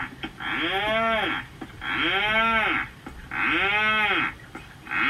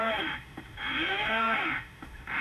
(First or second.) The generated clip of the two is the second